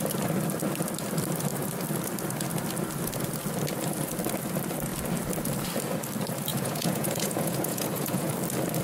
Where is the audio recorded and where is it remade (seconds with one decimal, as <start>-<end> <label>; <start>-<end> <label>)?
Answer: 0.0-6.5 recorded; 6.5-8.3 remade; 8.3-8.8 recorded